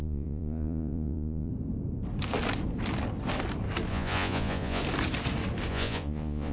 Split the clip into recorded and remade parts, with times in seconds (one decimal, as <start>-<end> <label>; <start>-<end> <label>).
0.0-1.5 remade; 1.5-3.9 recorded; 3.9-4.8 remade; 4.8-5.7 recorded; 5.7-6.5 remade